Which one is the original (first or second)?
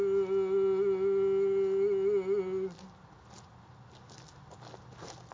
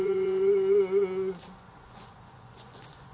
first